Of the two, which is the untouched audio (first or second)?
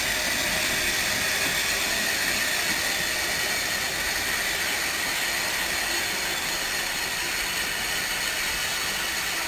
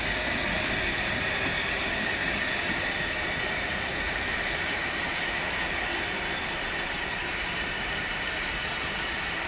first